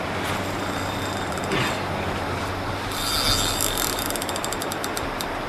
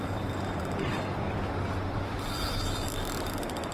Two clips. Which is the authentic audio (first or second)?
first